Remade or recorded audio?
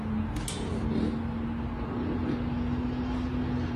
recorded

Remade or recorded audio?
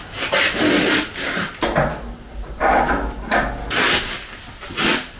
recorded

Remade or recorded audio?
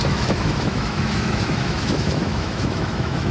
remade